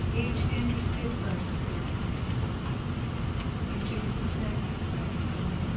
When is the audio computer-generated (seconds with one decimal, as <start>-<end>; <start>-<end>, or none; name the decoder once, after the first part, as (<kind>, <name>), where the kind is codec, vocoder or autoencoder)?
none